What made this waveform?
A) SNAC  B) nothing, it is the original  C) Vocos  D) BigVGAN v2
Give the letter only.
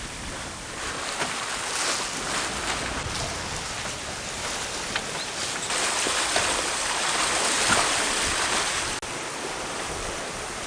B